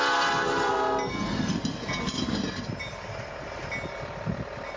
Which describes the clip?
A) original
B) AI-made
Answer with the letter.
A